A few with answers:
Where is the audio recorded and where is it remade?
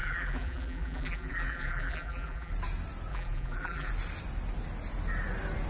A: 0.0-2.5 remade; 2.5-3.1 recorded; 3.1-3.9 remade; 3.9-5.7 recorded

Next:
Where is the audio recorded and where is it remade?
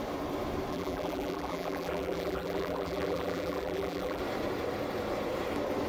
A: 0.0-0.7 recorded; 0.7-4.2 remade; 4.2-5.9 recorded